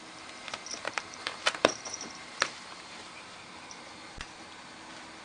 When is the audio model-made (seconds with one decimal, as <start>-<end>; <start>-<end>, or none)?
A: 0.7-3.4